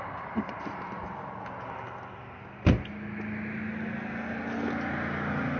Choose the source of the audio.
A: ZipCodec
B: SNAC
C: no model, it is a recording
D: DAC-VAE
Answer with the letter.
C